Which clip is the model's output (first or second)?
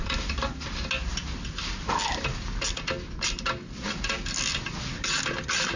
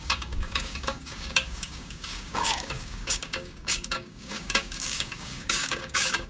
second